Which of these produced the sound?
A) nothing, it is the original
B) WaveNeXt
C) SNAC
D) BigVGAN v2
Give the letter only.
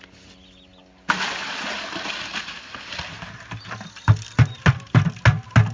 A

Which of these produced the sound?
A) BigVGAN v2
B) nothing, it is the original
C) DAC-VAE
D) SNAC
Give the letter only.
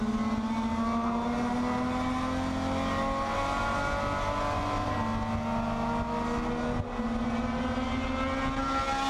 B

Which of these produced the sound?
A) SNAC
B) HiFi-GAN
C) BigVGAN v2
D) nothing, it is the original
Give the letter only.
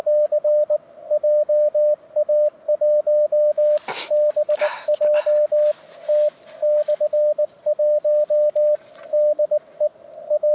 D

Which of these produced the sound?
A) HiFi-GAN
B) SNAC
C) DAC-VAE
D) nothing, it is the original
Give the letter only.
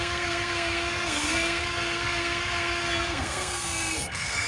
B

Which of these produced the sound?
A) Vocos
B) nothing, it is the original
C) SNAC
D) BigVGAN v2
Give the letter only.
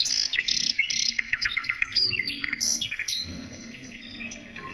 C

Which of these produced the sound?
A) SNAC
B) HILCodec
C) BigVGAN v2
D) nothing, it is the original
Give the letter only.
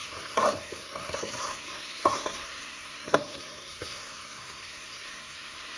A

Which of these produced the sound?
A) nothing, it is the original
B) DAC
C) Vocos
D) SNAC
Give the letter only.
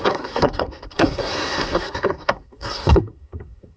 D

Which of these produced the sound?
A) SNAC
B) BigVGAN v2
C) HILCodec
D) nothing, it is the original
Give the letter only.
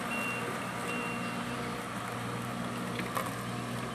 D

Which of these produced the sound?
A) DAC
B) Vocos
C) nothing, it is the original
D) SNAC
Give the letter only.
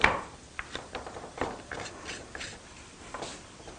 C